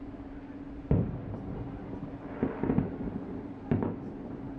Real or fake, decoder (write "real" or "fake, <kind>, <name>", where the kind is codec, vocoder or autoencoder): real